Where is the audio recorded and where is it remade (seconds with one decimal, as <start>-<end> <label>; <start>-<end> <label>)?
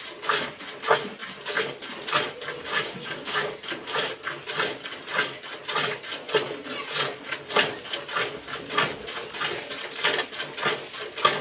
0.0-2.6 recorded; 2.6-4.1 remade; 4.1-11.4 recorded